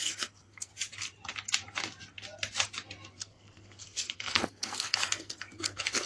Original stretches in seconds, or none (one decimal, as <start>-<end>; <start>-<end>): 0.7-3.1